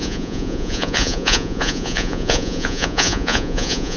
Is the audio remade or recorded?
remade